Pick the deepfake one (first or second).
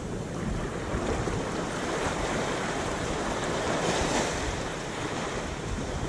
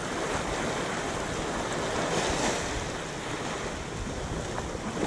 first